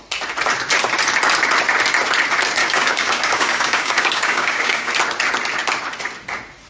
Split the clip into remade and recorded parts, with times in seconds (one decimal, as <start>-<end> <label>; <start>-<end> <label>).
0.0-2.6 recorded; 2.6-4.9 remade; 4.9-6.7 recorded

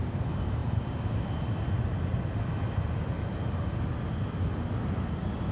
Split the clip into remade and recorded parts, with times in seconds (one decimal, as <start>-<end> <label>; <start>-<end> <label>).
0.0-5.5 recorded

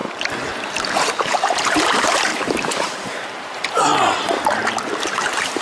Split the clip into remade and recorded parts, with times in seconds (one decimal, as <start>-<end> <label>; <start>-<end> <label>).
0.0-1.1 recorded; 1.1-3.9 remade; 3.9-5.0 recorded; 5.0-5.6 remade

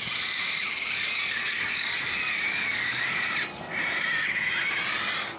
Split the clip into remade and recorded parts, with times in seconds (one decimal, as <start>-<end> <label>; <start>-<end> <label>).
0.0-0.7 recorded; 0.7-3.3 remade; 3.3-5.4 recorded

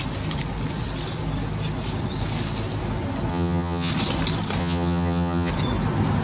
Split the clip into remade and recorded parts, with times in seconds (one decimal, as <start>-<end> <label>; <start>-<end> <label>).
0.0-3.3 recorded; 3.3-3.9 remade; 3.9-4.6 recorded; 4.6-5.5 remade; 5.5-6.2 recorded

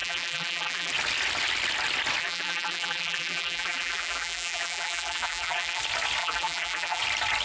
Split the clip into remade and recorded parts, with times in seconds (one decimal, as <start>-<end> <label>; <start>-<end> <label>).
0.0-0.9 remade; 0.9-2.2 recorded; 2.2-5.8 remade; 5.8-6.2 recorded; 6.2-7.0 remade; 7.0-7.4 recorded